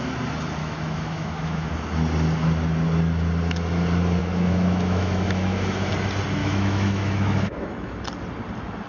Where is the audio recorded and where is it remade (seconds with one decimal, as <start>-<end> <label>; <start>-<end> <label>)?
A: 0.0-0.6 recorded; 0.6-1.7 remade; 1.7-4.2 recorded; 4.2-5.9 remade; 5.9-6.4 recorded; 6.4-8.0 remade; 8.0-8.9 recorded

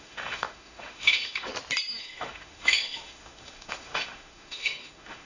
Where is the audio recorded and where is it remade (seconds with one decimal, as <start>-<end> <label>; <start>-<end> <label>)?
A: 0.0-1.5 remade; 1.5-2.0 recorded; 2.0-5.3 remade

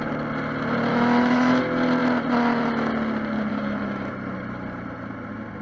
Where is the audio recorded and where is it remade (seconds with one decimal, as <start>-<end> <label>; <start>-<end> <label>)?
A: 0.0-0.9 recorded; 0.9-1.6 remade; 1.6-3.5 recorded; 3.5-4.1 remade; 4.1-5.6 recorded

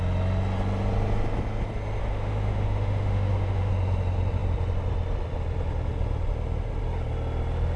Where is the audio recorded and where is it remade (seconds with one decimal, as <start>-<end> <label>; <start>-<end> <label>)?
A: 0.0-2.0 recorded; 2.0-3.7 remade; 3.7-7.8 recorded

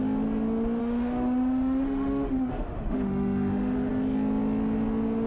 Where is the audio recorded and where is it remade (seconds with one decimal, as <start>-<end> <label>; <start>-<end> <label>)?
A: 0.0-0.8 recorded; 0.8-3.9 remade; 3.9-5.3 recorded

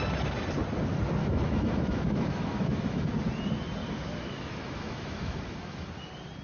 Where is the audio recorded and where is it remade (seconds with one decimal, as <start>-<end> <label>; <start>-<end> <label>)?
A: 0.0-1.2 recorded; 1.2-3.1 remade; 3.1-3.8 recorded; 3.8-5.9 remade; 5.9-6.4 recorded

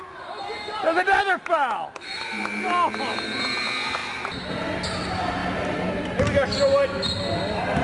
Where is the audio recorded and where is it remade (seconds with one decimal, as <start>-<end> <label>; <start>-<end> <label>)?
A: 0.0-7.8 recorded

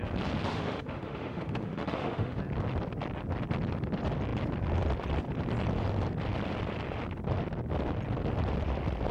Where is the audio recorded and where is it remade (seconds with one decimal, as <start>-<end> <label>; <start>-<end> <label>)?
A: 0.0-0.5 recorded; 0.5-2.4 remade; 2.4-9.1 recorded